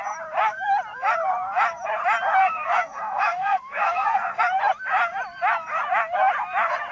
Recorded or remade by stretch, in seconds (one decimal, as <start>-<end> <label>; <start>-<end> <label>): 0.0-2.4 recorded; 2.4-4.4 remade; 4.4-6.9 recorded